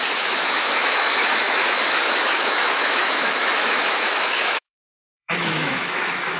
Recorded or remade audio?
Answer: remade